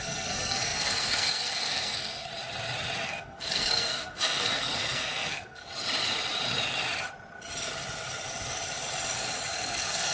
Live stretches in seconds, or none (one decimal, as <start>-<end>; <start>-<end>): 2.3-3.0; 5.6-9.5